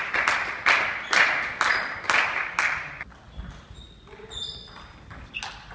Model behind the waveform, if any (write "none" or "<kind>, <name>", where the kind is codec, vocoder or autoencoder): none